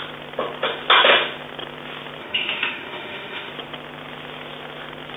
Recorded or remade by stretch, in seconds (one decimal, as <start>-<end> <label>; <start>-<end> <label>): 0.0-2.2 recorded; 2.2-3.5 remade; 3.5-5.2 recorded